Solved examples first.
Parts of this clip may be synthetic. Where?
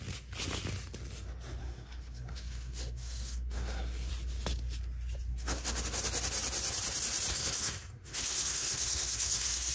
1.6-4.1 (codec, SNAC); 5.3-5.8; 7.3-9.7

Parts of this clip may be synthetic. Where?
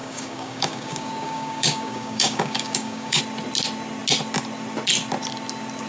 0.0-3.2 (codec, DAC)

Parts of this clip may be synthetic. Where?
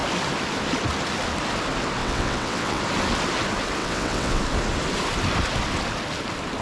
2.0-2.8 (vocoder, WaveNeXt); 3.8-4.4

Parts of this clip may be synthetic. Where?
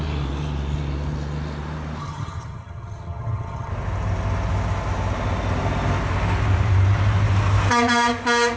2.0-3.7 (vocoder, HiFi-GAN)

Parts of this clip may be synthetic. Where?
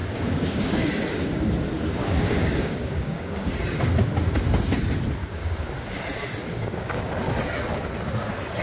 0.0-0.9 (codec, DAC); 2.0-3.5; 5.2-6.0; 6.4-7.0